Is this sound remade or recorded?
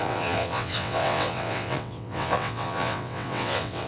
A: remade